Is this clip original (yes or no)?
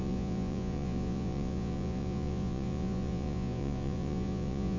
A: no